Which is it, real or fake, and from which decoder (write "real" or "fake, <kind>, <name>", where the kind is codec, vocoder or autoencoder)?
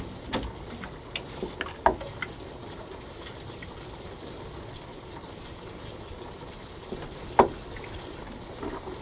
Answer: real